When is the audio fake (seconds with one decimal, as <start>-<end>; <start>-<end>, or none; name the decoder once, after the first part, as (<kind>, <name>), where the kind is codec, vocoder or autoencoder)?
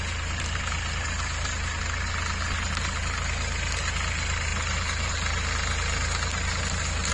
none